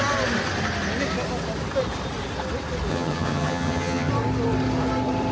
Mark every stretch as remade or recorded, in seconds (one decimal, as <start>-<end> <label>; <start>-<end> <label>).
0.0-2.9 recorded; 2.9-4.1 remade; 4.1-5.3 recorded